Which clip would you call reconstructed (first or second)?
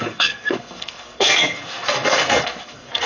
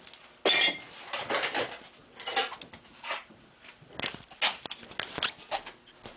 first